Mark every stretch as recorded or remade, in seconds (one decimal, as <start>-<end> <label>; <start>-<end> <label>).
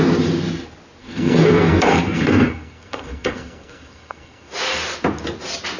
0.0-1.0 recorded; 1.0-4.5 remade; 4.5-5.8 recorded